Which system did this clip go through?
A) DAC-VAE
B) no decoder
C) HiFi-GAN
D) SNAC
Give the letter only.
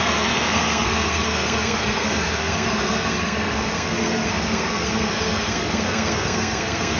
D